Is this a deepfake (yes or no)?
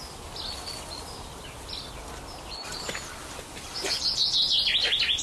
no